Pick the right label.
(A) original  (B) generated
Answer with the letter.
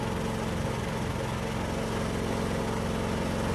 A